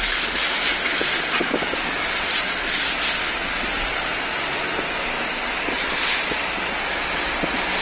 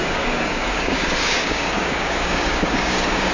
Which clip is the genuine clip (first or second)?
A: first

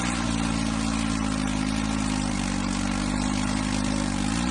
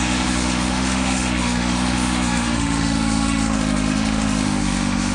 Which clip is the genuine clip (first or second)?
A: first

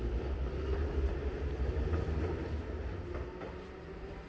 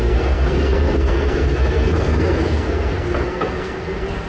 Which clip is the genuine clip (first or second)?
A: first